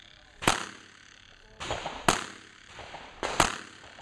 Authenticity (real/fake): real